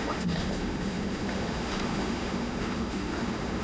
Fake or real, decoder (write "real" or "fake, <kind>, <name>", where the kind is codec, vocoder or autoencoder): fake, autoencoder, DAC-VAE